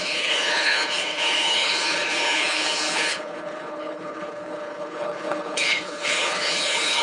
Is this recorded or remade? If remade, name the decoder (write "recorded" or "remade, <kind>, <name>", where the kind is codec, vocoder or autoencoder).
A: remade, codec, HILCodec